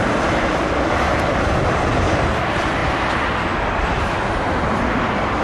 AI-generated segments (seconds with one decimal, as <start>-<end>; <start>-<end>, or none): none